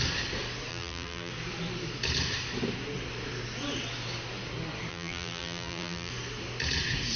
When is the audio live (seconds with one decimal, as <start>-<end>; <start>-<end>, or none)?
0.0-0.7; 1.3-4.9; 6.1-7.2